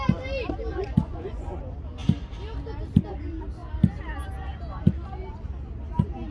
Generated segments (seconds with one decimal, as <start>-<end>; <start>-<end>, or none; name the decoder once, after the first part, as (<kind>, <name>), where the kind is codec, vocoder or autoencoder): 0.7-1.6 (vocoder, Vocos)